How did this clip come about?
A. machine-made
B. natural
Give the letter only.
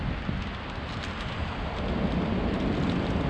B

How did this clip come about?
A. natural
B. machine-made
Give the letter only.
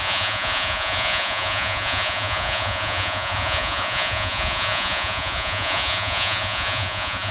B